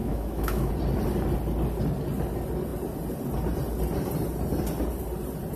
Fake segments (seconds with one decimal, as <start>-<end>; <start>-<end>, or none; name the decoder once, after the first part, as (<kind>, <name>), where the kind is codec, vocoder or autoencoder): 0.0-0.7 (autoencoder, DAC-VAE)